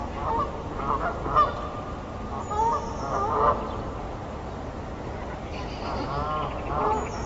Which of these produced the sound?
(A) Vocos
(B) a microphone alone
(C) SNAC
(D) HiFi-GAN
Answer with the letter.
B